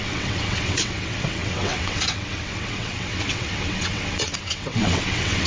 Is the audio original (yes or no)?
no